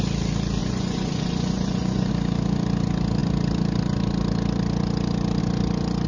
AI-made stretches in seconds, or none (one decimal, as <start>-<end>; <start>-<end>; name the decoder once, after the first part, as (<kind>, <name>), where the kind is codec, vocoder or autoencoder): 0.6-2.1 (vocoder, Vocos)